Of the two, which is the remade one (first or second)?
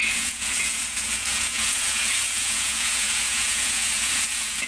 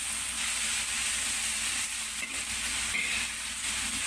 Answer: first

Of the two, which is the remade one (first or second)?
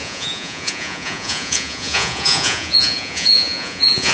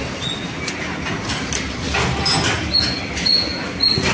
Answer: first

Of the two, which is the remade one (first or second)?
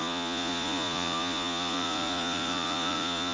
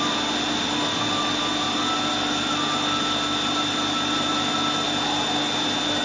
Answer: first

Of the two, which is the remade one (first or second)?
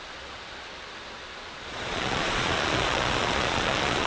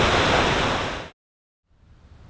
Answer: first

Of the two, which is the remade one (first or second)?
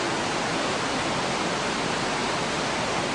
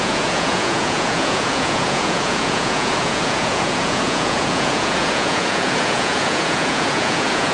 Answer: second